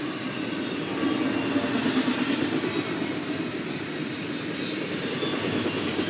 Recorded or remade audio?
recorded